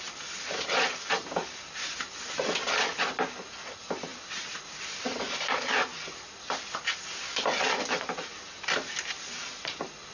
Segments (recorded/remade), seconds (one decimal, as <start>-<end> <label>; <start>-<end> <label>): 0.0-10.1 recorded